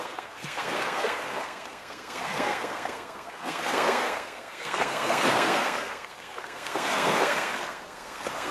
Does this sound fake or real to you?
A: fake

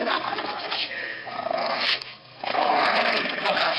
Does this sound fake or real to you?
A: fake